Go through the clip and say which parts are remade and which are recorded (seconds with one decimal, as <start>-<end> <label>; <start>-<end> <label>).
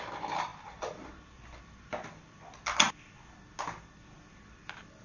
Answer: 0.0-5.0 recorded